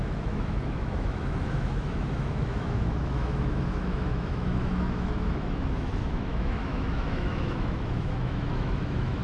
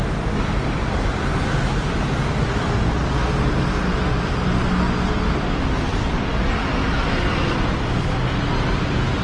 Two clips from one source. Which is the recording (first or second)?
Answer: second